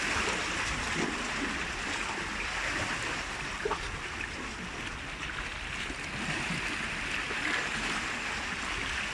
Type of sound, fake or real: real